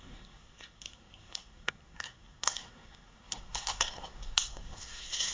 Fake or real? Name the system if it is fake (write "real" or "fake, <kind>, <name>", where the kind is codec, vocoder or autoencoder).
fake, codec, SNAC